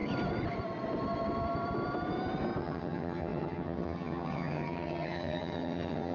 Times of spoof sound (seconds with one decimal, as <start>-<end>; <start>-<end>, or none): 2.6-6.1